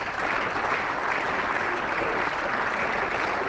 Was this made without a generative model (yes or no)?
yes